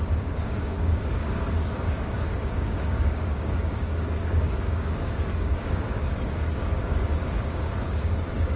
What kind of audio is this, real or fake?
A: fake